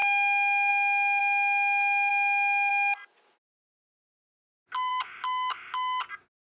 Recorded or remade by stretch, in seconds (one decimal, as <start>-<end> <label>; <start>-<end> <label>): 0.0-0.7 remade; 0.7-6.5 recorded